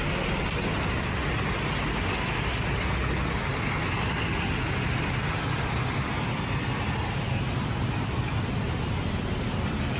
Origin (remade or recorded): recorded